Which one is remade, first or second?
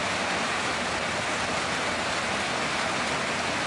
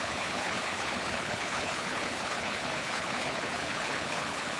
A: second